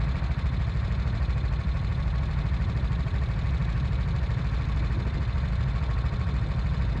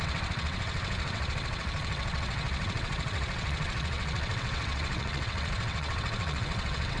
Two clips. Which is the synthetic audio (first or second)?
second